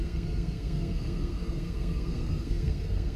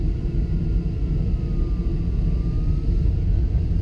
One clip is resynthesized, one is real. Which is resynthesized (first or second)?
first